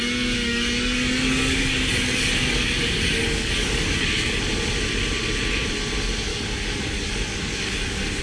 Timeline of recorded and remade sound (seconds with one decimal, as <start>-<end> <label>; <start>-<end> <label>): 0.0-4.4 remade; 4.4-6.3 recorded; 6.3-8.2 remade